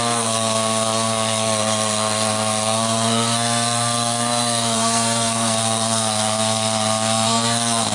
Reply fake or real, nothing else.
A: fake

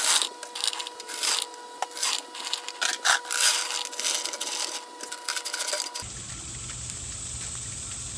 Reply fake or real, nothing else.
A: real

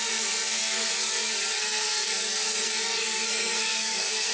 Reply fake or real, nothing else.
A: fake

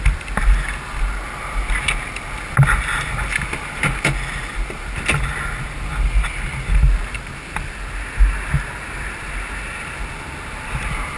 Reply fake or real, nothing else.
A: real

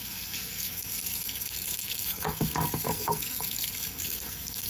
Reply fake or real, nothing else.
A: fake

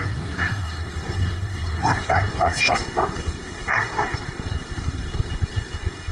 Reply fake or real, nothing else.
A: fake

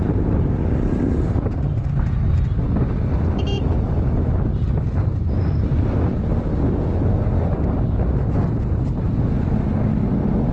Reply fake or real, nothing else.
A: real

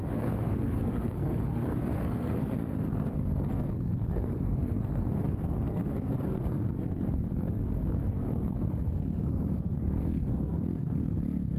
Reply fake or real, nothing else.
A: fake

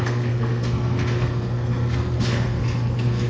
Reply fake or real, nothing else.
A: fake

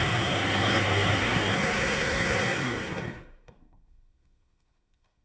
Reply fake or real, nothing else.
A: fake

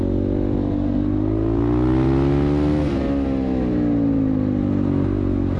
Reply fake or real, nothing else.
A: real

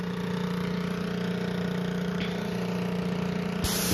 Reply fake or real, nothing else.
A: real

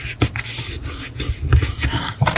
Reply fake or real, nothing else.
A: real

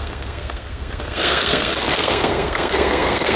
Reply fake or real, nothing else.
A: fake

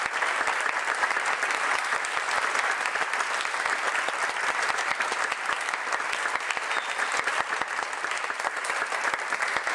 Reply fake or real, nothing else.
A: real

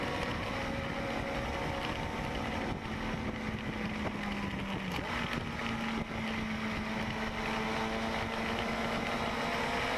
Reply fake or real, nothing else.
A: real